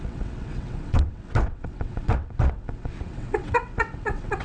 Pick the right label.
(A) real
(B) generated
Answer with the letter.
B